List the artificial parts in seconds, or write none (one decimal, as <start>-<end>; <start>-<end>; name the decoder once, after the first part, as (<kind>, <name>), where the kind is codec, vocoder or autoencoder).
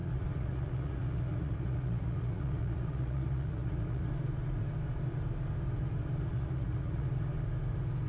0.0-4.1 (vocoder, Vocos); 6.3-7.1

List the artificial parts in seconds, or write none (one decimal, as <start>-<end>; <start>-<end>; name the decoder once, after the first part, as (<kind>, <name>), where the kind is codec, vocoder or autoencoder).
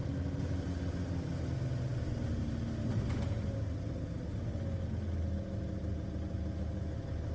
none